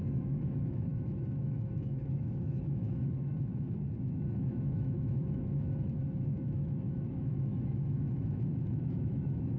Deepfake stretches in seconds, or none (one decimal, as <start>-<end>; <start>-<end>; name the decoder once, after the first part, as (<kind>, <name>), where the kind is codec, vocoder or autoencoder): 0.0-9.6 (autoencoder, DAC-VAE)